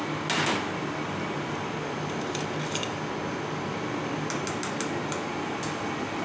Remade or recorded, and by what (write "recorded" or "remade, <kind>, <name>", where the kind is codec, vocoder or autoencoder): recorded